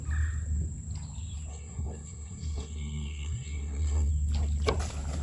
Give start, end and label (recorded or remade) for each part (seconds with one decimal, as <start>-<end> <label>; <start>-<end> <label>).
0.0-1.5 recorded; 1.5-4.1 remade; 4.1-5.2 recorded